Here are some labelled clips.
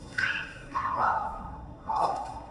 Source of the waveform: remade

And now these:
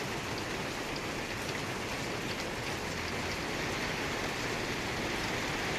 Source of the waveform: recorded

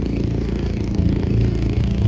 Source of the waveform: remade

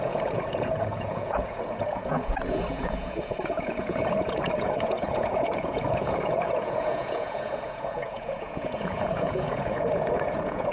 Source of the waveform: remade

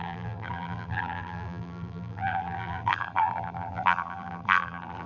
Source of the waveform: remade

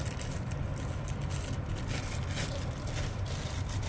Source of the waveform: recorded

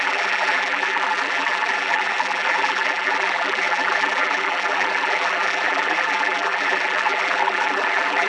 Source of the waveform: remade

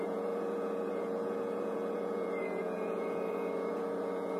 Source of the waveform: remade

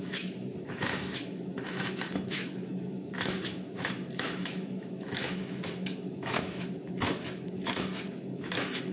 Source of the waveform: remade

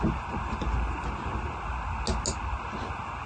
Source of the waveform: recorded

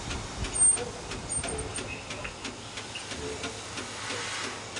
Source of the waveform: recorded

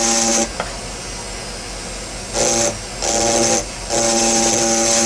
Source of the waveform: recorded